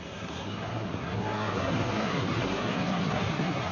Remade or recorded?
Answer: remade